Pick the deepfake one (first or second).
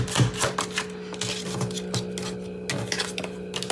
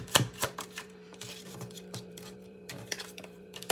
second